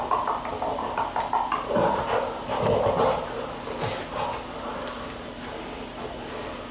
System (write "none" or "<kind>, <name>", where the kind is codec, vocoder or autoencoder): none